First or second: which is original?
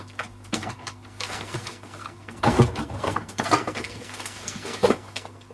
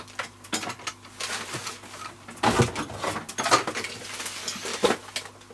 second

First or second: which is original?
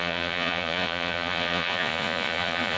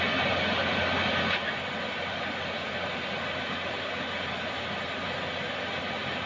second